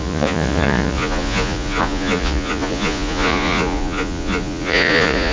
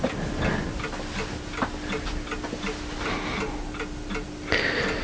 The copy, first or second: first